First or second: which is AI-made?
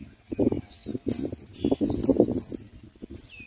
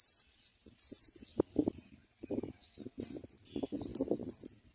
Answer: second